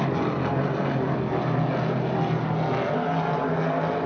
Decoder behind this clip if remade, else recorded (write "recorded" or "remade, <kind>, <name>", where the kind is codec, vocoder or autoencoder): recorded